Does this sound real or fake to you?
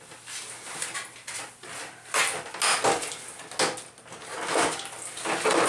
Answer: real